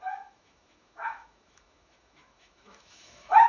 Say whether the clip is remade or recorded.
remade